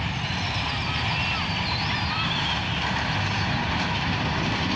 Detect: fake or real real